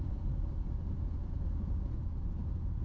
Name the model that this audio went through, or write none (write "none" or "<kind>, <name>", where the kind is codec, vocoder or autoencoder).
vocoder, Vocos